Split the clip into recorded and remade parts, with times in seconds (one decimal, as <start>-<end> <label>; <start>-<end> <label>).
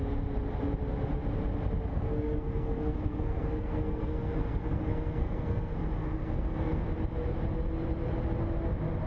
0.0-1.9 recorded; 1.9-6.8 remade; 6.8-9.1 recorded